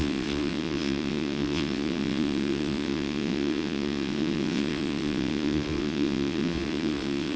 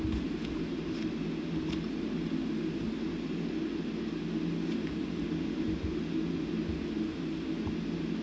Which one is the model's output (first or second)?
first